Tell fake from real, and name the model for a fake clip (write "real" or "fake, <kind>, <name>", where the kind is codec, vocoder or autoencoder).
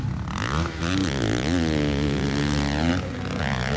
real